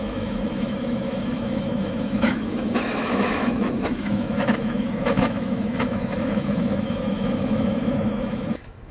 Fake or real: fake